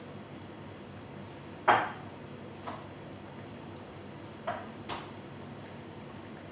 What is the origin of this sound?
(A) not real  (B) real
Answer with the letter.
B